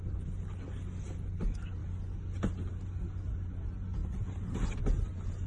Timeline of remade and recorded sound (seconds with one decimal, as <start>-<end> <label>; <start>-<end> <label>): 0.0-5.5 recorded